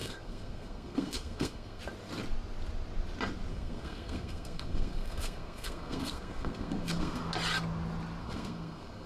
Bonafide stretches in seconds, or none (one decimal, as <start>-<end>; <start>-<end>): 1.8-3.5; 7.3-8.2